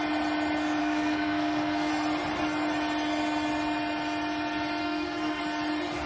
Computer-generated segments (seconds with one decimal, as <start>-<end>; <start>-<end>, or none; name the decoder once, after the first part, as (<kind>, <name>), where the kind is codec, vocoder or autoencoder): 0.8-1.9 (codec, SNAC); 4.8-5.4